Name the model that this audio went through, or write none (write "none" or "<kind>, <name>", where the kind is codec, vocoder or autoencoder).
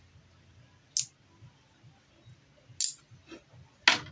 none